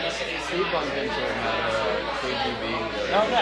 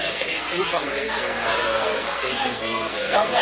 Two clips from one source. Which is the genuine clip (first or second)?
first